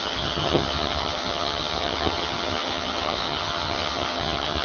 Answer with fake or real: fake